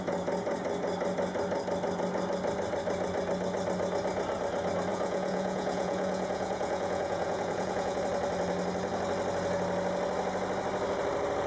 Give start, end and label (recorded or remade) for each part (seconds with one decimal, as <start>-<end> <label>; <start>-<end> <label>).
0.0-4.9 recorded; 4.9-8.0 remade; 8.0-11.5 recorded